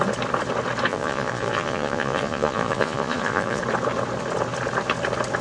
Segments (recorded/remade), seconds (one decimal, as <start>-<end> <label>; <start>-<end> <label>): 0.0-0.9 recorded; 0.9-3.6 remade; 3.6-5.4 recorded